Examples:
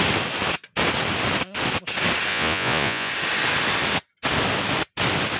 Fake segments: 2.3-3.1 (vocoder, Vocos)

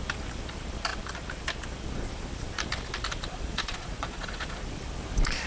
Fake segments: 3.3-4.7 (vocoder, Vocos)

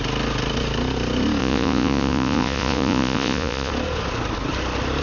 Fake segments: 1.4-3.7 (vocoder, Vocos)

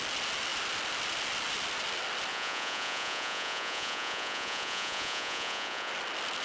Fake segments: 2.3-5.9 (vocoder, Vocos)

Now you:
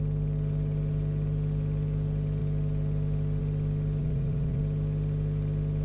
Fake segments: 4.0-4.6 (vocoder, Vocos)

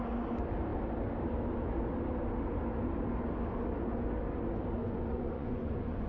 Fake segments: 4.8-6.1 (vocoder, Vocos)

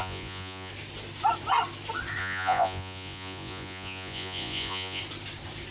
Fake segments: 0.0-0.7 (vocoder, Vocos); 2.2-5.0

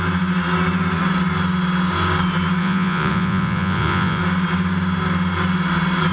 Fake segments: 2.6-4.2 (vocoder, Vocos)